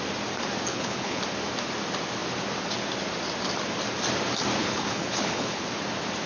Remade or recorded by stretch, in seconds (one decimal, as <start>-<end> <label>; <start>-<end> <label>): 0.0-0.7 recorded; 0.7-1.2 remade; 1.2-4.6 recorded; 4.6-5.7 remade; 5.7-6.3 recorded